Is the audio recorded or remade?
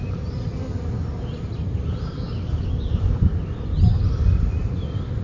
recorded